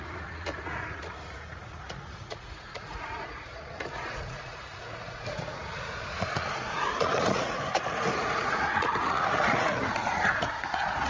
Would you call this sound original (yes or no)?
no